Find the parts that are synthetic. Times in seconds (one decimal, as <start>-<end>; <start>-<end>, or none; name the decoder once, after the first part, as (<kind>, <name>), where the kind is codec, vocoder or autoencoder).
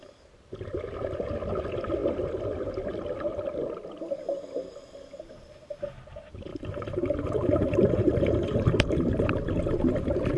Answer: 6.5-10.4 (vocoder, BigVGAN v2)